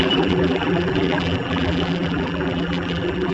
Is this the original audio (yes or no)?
no